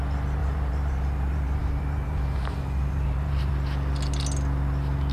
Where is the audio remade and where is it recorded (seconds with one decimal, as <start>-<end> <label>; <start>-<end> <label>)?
0.0-0.4 recorded; 0.4-3.5 remade; 3.5-5.1 recorded

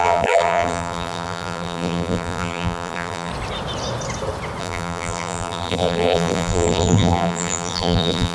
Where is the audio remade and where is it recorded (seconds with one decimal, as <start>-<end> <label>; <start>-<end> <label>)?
0.0-3.3 remade; 3.3-4.6 recorded; 4.6-8.3 remade

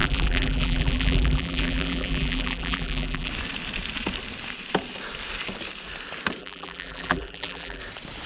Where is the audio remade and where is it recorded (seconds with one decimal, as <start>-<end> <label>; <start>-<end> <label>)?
0.0-3.3 remade; 3.3-6.4 recorded; 6.4-7.8 remade; 7.8-8.3 recorded

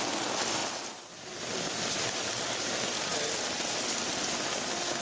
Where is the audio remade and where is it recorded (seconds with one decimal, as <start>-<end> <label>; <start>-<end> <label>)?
0.0-5.0 recorded

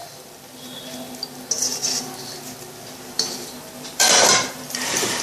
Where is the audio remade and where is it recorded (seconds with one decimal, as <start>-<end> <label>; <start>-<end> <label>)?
0.0-3.1 recorded; 3.1-5.2 remade